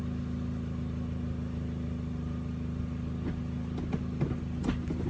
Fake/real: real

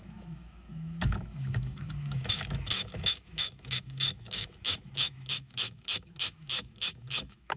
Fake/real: fake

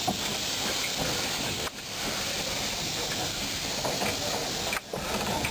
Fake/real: fake